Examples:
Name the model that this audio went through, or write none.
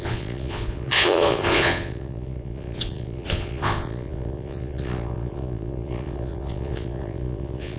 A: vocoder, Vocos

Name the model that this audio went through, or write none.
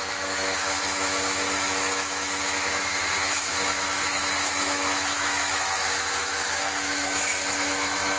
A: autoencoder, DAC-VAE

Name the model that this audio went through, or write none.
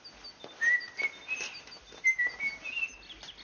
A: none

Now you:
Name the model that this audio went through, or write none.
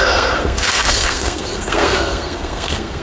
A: codec, SNAC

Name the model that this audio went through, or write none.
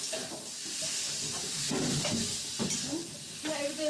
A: none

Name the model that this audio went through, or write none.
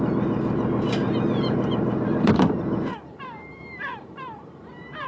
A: vocoder, BigVGAN v2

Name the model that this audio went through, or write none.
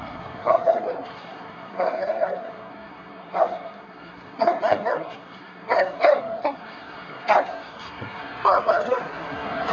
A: codec, SNAC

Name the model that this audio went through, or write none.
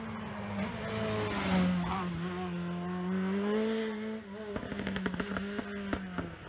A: none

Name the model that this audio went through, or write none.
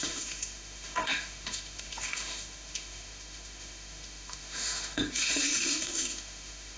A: autoencoder, DAC-VAE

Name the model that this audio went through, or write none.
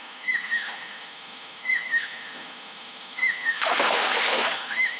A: autoencoder, DAC-VAE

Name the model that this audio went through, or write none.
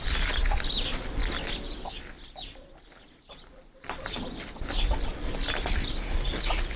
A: none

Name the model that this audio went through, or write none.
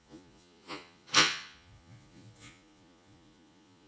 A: vocoder, Vocos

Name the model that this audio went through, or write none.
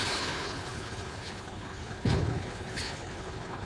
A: codec, HILCodec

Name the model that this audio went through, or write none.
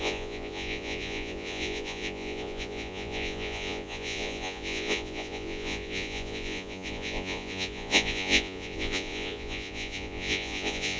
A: vocoder, Vocos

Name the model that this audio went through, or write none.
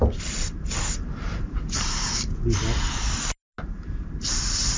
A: none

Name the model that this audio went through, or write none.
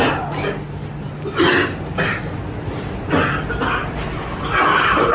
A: none